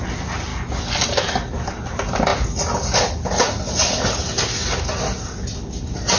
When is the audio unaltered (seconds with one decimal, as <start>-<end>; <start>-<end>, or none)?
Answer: 0.0-6.2